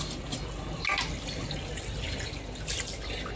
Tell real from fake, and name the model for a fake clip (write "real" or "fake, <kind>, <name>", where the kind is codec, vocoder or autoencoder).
real